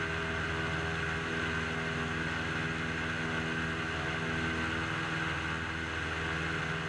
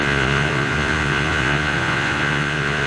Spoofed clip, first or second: second